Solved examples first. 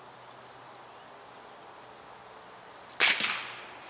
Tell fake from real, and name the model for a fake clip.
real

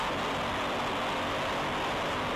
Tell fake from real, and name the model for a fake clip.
real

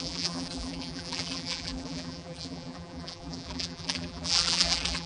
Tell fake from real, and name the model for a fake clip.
fake, vocoder, BigVGAN v2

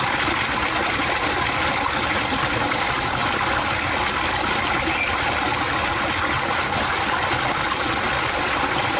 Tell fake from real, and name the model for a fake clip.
real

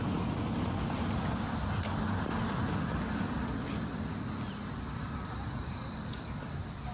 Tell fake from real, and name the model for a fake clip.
real